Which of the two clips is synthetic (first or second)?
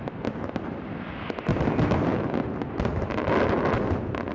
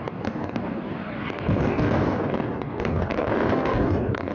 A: second